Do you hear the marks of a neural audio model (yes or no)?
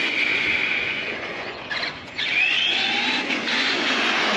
yes